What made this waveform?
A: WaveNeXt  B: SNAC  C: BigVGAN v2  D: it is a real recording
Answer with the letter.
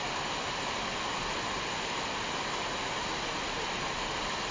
D